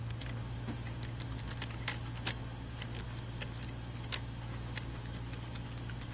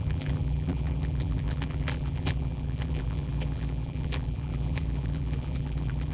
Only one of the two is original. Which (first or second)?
first